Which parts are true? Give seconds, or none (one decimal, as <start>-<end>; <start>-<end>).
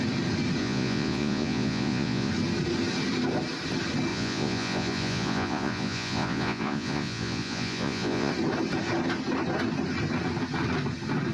0.0-0.6; 2.3-4.1; 8.3-11.3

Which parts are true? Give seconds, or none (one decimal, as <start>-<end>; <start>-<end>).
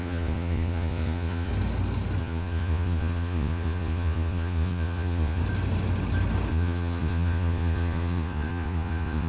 1.5-2.2; 5.4-6.5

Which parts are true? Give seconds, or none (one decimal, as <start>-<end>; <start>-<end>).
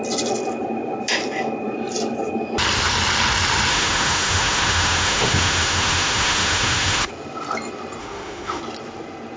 0.0-3.7; 7.1-8.0; 8.6-9.4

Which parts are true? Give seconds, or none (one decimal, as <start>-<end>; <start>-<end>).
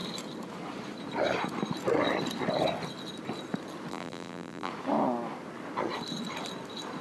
0.0-3.9; 4.7-7.0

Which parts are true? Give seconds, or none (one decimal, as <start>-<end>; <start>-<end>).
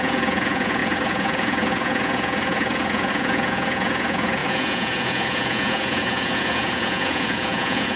none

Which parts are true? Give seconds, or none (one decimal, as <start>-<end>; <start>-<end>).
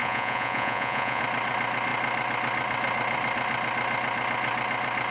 1.2-5.1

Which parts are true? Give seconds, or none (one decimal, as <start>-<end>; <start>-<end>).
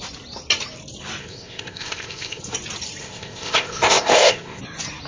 0.0-1.2; 2.4-3.0; 4.6-5.1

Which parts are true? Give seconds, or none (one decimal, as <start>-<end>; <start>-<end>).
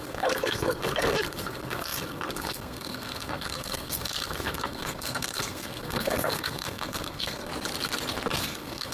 7.5-8.4